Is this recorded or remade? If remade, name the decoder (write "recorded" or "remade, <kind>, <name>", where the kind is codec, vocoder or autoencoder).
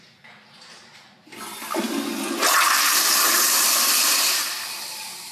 recorded